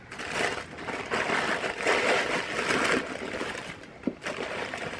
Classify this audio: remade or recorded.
recorded